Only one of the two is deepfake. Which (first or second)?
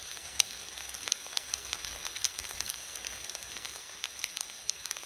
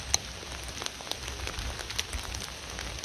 first